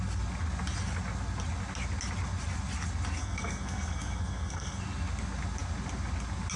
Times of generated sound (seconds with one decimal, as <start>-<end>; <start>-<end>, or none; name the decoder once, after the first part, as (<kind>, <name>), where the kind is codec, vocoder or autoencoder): 3.2-4.8 (codec, SNAC)